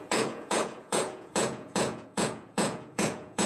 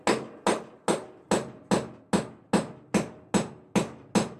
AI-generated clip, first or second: first